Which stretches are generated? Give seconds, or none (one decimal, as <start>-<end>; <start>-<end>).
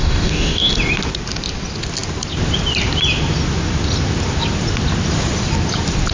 0.0-0.7